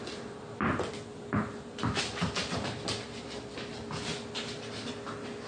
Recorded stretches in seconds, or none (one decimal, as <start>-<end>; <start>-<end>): 0.0-5.5